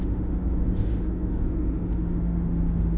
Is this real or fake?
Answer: fake